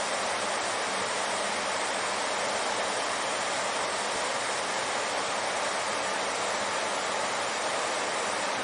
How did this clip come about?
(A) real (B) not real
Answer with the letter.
A